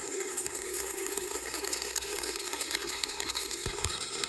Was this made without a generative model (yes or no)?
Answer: no